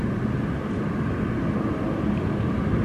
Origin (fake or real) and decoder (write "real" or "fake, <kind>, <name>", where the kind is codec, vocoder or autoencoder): real